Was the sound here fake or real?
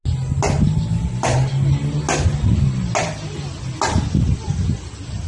real